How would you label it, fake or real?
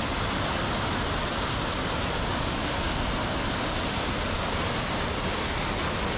real